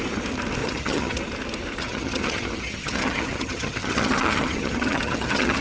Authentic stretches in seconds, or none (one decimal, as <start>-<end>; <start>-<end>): 0.0-0.6; 1.2-1.8